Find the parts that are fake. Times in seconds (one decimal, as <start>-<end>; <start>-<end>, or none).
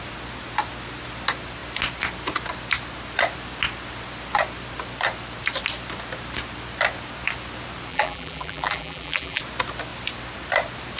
7.9-9.4